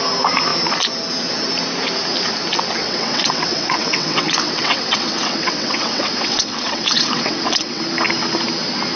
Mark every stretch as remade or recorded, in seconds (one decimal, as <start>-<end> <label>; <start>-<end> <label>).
0.0-2.8 recorded; 2.8-7.8 remade; 7.8-9.0 recorded